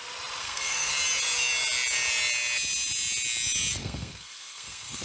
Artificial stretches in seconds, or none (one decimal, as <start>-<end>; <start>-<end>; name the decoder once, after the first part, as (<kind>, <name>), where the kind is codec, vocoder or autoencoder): 0.4-0.9 (codec, SNAC); 3.8-5.0